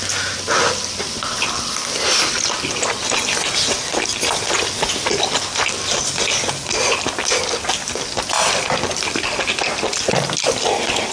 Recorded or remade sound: recorded